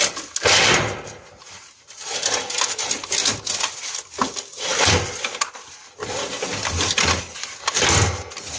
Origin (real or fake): real